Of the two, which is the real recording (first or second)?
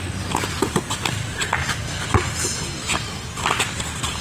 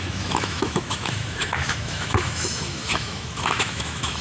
first